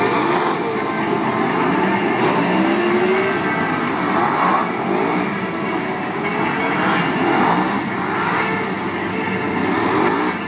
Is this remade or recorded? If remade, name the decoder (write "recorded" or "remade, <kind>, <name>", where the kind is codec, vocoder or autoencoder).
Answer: recorded